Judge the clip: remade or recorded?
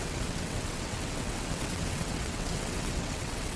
remade